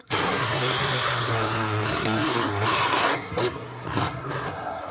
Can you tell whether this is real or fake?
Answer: fake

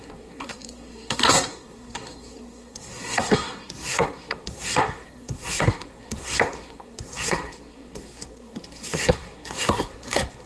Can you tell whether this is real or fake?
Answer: fake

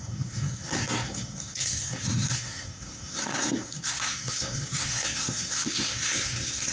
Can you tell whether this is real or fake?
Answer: fake